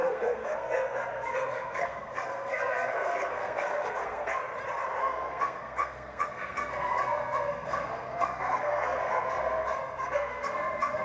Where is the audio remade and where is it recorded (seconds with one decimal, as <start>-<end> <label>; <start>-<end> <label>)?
0.0-4.4 remade; 4.4-5.0 recorded; 5.0-11.0 remade